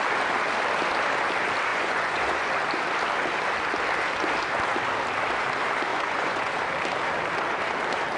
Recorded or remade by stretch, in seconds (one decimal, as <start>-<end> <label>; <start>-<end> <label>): 0.0-1.7 recorded; 1.7-2.5 remade; 2.5-5.9 recorded; 5.9-6.5 remade; 6.5-8.2 recorded